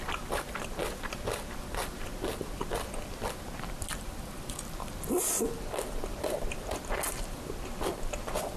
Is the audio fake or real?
real